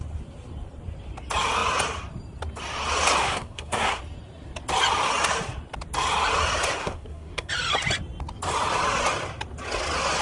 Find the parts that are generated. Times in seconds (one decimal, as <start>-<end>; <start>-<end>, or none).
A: 3.2-4.0; 6.8-7.5